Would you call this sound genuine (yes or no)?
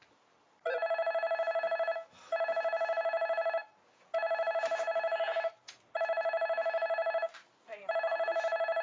yes